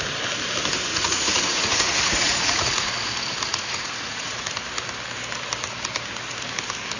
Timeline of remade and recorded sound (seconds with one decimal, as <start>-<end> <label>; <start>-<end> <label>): 0.0-0.9 recorded; 0.9-2.9 remade; 2.9-3.5 recorded; 3.5-4.5 remade; 4.5-7.0 recorded